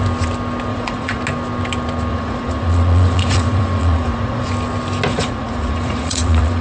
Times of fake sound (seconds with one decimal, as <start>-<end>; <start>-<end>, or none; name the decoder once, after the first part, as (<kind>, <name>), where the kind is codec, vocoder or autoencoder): 0.7-1.2 (vocoder, Vocos); 2.1-4.5; 5.1-6.6